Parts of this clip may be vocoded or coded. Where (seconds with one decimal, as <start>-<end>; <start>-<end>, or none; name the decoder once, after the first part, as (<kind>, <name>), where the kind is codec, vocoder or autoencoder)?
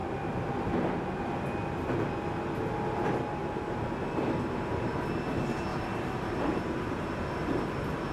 5.7-7.6 (vocoder, BigVGAN v2)